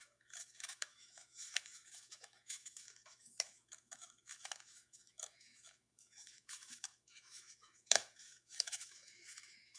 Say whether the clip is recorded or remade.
remade